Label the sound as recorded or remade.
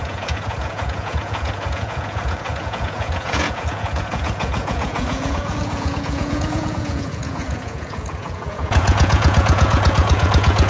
remade